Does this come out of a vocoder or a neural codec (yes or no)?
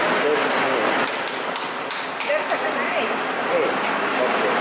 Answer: no